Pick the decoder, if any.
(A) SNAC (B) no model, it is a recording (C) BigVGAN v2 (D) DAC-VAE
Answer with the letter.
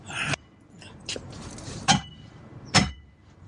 C